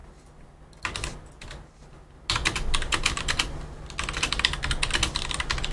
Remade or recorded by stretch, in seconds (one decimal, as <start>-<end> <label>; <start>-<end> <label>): 0.0-5.7 recorded

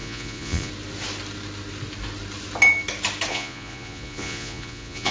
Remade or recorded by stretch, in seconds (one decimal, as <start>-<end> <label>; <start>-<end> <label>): 0.0-0.7 remade; 0.7-3.3 recorded; 3.3-5.1 remade

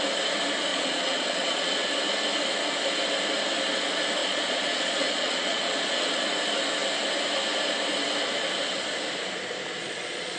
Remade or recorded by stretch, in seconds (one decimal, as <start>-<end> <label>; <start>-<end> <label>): 0.0-0.7 recorded; 0.7-1.9 remade; 1.9-4.2 recorded; 4.2-6.2 remade; 6.2-9.8 recorded; 9.8-10.4 remade

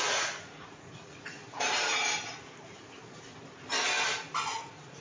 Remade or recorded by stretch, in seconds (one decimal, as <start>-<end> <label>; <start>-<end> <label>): 0.0-1.4 remade; 1.4-4.4 recorded; 4.4-5.0 remade

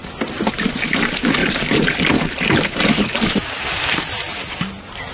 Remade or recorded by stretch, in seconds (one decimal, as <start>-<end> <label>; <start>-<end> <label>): 0.0-5.1 recorded